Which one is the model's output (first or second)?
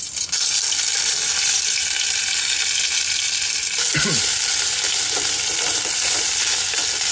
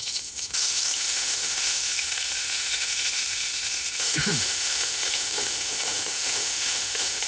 second